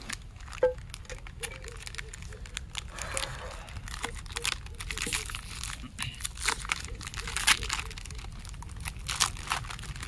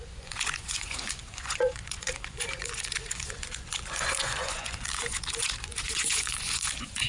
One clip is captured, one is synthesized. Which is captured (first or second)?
first